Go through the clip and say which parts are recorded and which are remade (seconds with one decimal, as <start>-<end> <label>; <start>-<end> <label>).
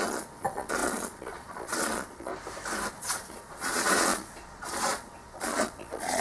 0.0-2.3 remade; 2.3-2.9 recorded; 2.9-6.2 remade